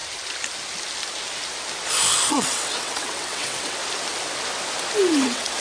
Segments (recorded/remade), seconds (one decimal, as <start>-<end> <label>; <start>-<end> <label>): 0.0-2.3 recorded; 2.3-3.8 remade; 3.8-5.0 recorded; 5.0-5.6 remade